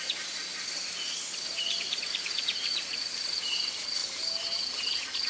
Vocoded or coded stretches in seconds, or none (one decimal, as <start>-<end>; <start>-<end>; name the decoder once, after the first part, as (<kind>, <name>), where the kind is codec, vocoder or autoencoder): 0.5-3.2 (vocoder, BigVGAN v2)